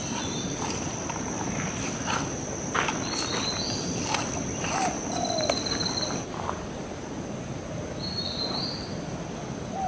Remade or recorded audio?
recorded